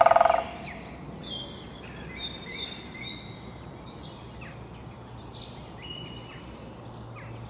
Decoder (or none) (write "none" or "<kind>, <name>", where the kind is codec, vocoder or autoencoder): none